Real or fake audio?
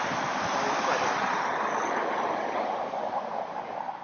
real